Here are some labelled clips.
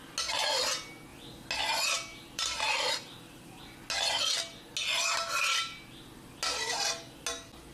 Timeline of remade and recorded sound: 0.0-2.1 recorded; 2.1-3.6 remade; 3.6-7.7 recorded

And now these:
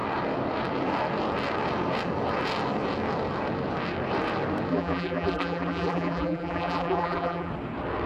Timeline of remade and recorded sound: 0.0-4.7 recorded; 4.7-7.5 remade; 7.5-8.1 recorded

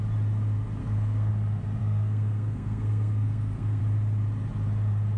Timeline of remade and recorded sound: 0.0-0.8 recorded; 0.8-1.3 remade; 1.3-1.8 recorded; 1.8-3.8 remade; 3.8-5.2 recorded

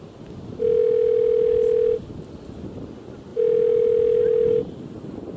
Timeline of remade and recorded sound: 0.0-5.4 recorded

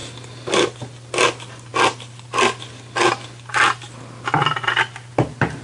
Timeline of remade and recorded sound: 0.0-5.6 recorded

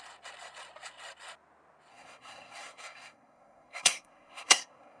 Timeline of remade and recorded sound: 0.0-1.9 recorded; 1.9-5.0 remade